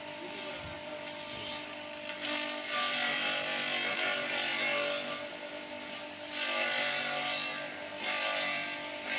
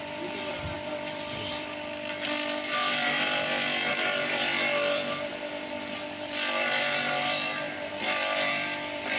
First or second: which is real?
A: first